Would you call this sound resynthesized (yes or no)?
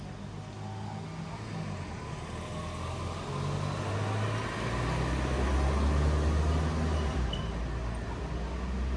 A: no